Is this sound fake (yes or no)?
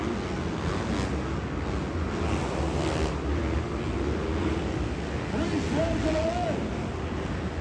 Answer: no